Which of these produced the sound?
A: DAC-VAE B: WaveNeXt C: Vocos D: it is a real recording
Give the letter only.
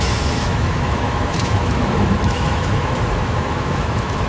A